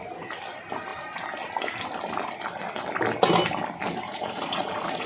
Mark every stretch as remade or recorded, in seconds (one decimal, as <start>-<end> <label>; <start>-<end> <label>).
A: 0.0-4.1 recorded; 4.1-5.1 remade